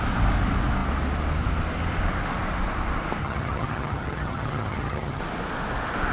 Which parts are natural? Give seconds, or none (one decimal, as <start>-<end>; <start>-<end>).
0.0-3.2; 5.2-6.1

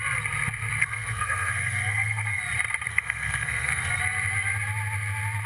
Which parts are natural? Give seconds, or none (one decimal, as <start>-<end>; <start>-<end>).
0.0-0.8; 2.4-2.9; 4.0-5.5

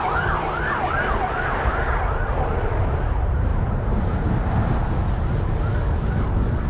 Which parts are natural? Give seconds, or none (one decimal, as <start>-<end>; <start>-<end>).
0.0-5.7

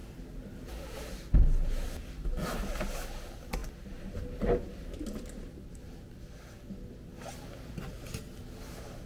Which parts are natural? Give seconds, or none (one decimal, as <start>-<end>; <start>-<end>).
0.0-9.1

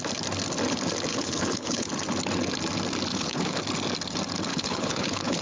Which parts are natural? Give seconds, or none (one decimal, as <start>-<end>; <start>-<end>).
0.0-1.1; 1.9-3.1; 3.6-4.5

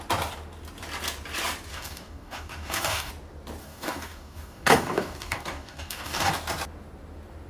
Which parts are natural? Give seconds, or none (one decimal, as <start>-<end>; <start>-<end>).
0.0-1.7; 3.1-3.6; 6.3-7.5